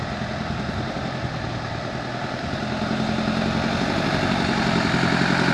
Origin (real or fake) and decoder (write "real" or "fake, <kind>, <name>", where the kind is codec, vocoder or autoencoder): real